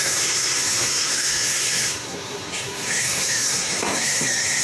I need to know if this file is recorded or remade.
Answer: remade